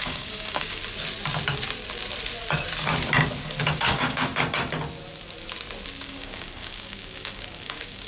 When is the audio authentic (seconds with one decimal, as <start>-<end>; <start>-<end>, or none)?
0.8-3.6; 4.3-6.0